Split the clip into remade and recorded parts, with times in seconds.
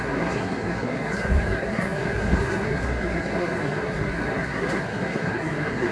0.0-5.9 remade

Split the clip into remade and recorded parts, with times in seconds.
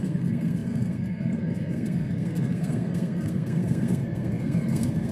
0.0-5.1 remade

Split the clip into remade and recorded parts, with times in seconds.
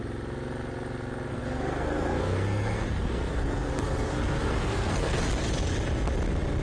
0.0-1.3 recorded; 1.3-5.2 remade; 5.2-6.6 recorded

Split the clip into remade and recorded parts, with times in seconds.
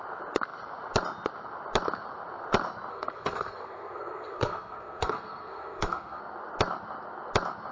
0.0-2.9 recorded; 2.9-6.2 remade; 6.2-7.7 recorded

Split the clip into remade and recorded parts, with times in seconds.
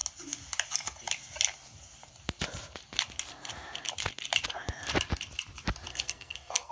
0.0-5.9 recorded; 5.9-6.7 remade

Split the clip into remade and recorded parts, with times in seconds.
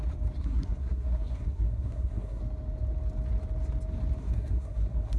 0.0-0.4 recorded; 0.4-2.4 remade; 2.4-4.2 recorded; 4.2-5.2 remade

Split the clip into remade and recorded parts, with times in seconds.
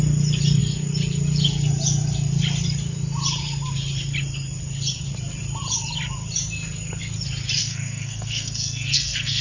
0.0-7.6 recorded; 7.6-9.4 remade